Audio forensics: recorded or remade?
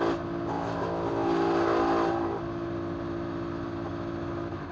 recorded